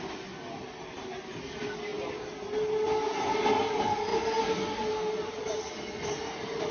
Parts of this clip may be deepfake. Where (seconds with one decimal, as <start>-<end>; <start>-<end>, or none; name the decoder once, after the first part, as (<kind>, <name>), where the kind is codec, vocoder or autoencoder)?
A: none